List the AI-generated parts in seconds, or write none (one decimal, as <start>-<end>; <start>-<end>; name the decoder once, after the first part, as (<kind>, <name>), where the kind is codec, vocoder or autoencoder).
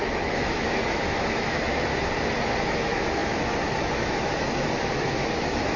0.0-1.9 (autoencoder, DAC-VAE); 2.6-5.8